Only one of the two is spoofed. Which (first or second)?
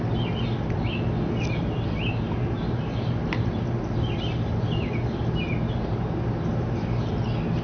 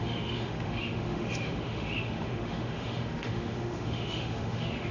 second